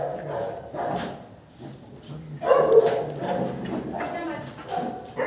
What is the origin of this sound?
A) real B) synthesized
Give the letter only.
A